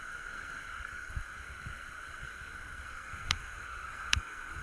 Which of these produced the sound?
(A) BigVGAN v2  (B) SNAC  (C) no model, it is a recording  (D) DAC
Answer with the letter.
B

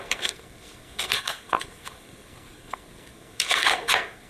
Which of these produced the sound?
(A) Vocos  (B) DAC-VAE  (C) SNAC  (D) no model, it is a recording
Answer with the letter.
C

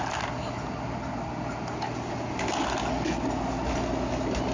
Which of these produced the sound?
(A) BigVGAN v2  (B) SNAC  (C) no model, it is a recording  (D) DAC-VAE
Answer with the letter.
C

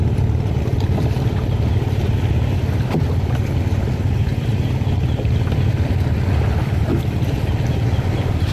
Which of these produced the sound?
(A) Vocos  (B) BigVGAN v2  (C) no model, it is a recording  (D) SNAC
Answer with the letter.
C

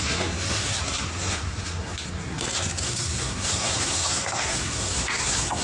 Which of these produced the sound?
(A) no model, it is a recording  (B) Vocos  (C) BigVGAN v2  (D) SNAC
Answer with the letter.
D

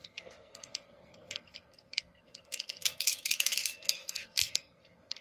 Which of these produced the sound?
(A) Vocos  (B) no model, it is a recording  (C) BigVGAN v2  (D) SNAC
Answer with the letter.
D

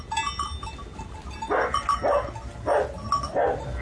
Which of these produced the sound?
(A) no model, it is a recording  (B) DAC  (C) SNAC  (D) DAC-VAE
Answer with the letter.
A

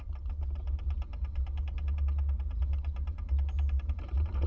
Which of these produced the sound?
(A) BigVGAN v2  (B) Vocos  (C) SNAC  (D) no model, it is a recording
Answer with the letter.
D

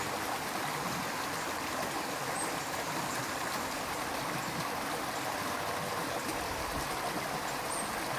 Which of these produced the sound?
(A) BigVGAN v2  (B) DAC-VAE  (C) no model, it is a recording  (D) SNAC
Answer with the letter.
C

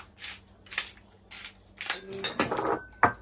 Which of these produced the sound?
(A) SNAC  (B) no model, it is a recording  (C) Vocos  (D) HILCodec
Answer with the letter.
B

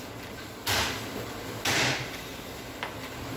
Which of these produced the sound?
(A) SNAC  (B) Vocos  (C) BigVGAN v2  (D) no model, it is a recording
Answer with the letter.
D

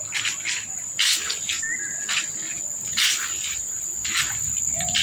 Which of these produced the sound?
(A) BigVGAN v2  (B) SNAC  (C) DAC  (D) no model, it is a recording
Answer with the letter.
D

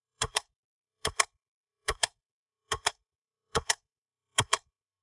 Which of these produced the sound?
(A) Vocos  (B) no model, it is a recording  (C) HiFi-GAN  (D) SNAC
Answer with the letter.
D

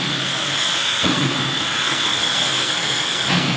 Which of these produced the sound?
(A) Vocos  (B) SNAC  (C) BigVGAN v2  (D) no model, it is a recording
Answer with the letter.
B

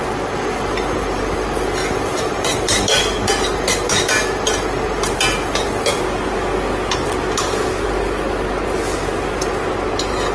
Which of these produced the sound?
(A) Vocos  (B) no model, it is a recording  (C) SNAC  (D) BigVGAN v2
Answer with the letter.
B